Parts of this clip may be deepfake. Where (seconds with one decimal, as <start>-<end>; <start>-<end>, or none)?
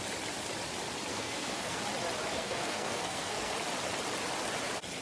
1.1-1.8; 2.3-3.5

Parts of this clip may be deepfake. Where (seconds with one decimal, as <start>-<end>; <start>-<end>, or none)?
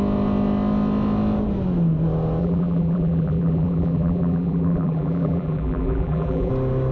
2.4-6.5